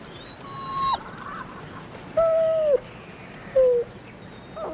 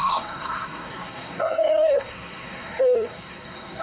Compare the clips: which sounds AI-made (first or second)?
second